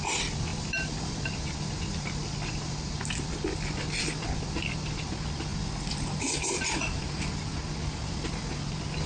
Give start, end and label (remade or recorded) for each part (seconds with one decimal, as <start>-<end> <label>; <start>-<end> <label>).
0.0-9.1 recorded